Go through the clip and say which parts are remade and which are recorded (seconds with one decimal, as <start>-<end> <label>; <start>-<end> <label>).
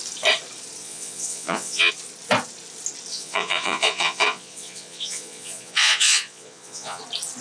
0.0-0.8 recorded; 0.8-1.9 remade; 1.9-3.1 recorded; 3.1-7.0 remade; 7.0-7.4 recorded